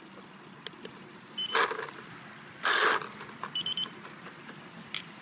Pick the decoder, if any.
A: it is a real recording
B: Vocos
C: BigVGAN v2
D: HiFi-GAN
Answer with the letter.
A